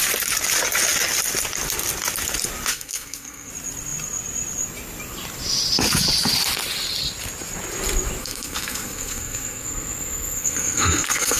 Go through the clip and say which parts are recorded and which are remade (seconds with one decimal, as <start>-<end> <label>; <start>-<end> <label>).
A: 0.0-2.7 recorded; 2.7-3.5 remade; 3.5-8.2 recorded; 8.2-11.4 remade